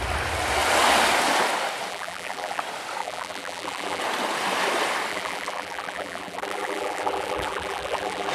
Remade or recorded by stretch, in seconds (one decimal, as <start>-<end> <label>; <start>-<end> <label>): 0.0-1.9 recorded; 1.9-2.6 remade; 2.6-3.0 recorded; 3.0-4.0 remade; 4.0-5.1 recorded; 5.1-8.3 remade